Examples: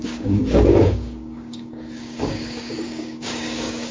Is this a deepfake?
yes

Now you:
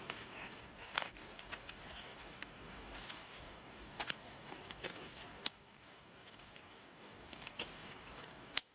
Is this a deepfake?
yes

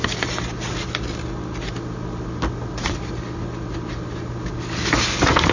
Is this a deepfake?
no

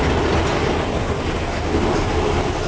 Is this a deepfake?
no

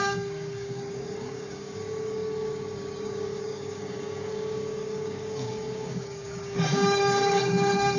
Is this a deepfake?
yes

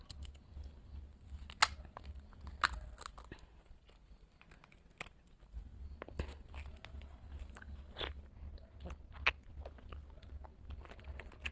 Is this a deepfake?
no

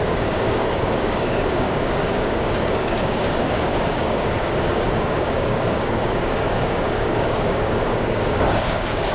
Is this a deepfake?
yes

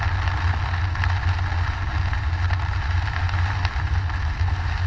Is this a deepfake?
no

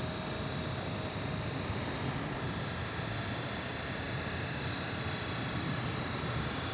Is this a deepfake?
no